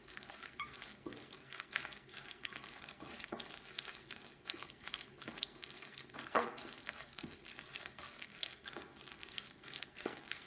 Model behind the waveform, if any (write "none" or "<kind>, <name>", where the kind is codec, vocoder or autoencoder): codec, SNAC